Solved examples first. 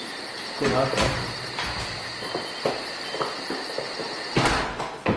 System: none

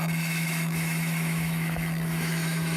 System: autoencoder, DAC-VAE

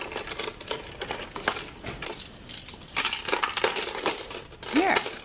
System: none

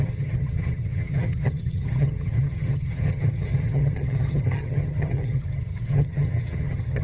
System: vocoder, HiFi-GAN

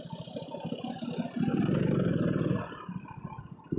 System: none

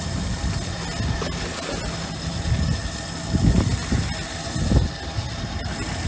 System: none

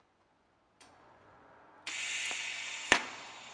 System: vocoder, Vocos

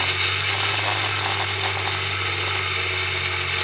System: none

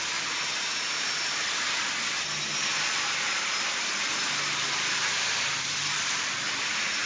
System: none